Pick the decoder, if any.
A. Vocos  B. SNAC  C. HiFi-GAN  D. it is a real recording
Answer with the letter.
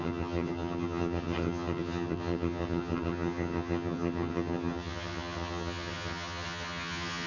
C